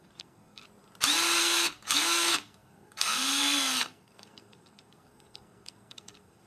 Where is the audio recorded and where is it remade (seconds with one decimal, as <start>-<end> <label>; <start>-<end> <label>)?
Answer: 0.0-0.6 remade; 0.6-1.4 recorded; 1.4-6.5 remade